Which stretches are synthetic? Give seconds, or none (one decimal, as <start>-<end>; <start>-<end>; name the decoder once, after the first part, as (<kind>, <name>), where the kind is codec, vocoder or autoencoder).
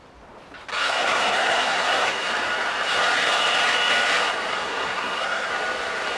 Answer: 0.7-2.3 (codec, SNAC); 4.5-5.5